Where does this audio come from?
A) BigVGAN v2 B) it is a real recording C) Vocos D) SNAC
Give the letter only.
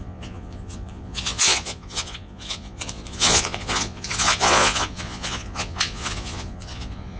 C